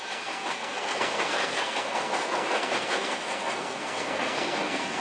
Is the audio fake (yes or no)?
yes